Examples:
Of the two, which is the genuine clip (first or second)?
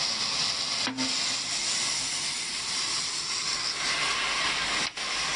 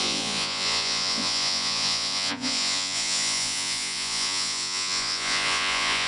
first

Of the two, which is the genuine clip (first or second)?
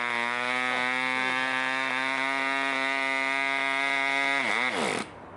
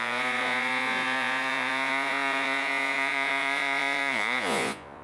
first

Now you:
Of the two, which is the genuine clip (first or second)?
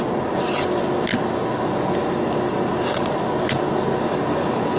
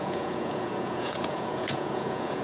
first